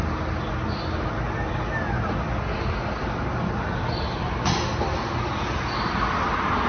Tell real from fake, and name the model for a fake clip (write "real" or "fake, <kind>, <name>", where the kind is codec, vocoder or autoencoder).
real